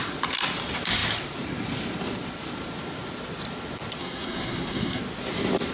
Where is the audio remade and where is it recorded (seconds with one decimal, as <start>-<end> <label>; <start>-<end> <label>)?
0.0-4.0 recorded; 4.0-5.0 remade; 5.0-5.7 recorded